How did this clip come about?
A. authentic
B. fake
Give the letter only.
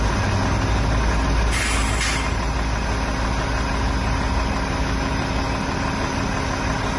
A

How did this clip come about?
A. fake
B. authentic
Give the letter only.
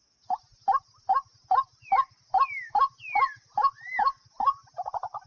B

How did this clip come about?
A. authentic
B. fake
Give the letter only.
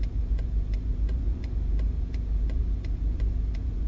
B